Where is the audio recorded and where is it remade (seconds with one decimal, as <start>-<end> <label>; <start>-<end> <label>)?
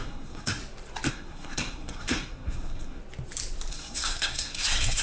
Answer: 0.0-0.6 remade; 0.6-1.1 recorded; 1.1-3.0 remade; 3.0-3.7 recorded; 3.7-5.0 remade